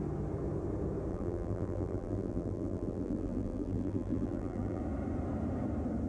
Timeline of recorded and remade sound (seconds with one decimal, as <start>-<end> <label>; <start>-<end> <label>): 0.0-1.1 recorded; 1.1-4.8 remade; 4.8-6.1 recorded